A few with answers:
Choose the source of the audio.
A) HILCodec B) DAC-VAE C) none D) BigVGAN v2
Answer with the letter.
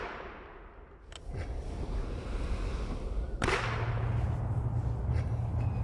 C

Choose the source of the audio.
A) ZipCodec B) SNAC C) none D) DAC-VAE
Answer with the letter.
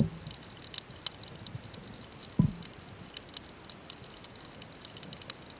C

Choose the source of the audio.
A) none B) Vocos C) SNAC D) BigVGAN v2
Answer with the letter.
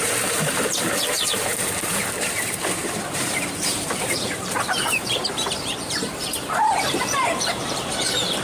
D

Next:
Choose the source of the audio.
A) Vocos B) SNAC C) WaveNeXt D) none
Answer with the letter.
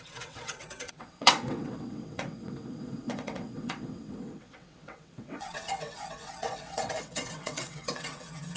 C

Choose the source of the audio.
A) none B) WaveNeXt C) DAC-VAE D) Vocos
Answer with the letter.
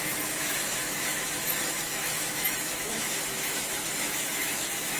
C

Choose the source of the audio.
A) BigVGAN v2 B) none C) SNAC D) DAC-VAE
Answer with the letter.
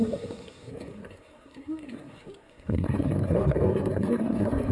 C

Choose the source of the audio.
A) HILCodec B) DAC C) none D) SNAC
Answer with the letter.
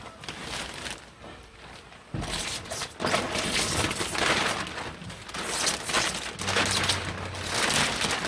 C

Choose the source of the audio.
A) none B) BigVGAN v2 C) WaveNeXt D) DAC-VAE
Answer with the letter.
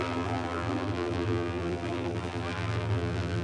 B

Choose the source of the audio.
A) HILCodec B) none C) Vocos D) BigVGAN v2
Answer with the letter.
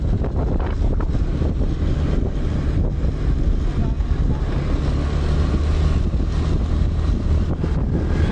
B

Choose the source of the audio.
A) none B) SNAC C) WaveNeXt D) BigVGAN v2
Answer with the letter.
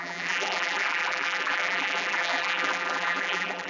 D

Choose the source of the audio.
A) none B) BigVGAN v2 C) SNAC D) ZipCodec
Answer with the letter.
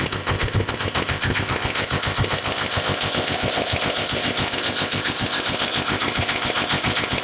D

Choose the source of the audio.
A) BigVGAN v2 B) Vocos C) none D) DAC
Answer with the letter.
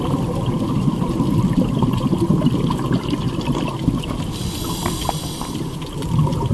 C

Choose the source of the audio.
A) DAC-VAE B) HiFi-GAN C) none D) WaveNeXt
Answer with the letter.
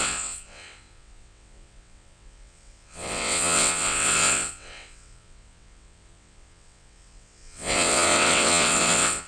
D